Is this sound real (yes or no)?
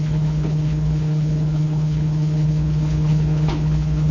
no